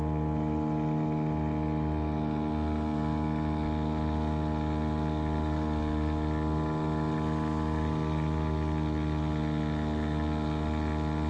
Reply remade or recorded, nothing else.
recorded